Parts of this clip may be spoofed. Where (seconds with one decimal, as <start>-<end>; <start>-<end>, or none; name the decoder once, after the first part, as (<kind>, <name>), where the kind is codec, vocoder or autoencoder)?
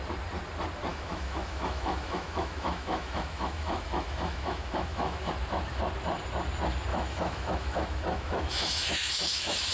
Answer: 0.9-5.3 (autoencoder, DAC-VAE); 6.9-9.7